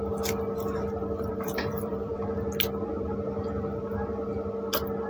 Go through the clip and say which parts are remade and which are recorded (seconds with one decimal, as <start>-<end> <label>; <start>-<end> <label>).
0.0-1.3 recorded; 1.3-2.1 remade; 2.1-5.1 recorded